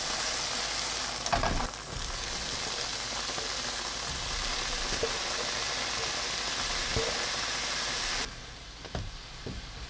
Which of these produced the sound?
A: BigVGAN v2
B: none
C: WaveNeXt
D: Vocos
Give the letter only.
B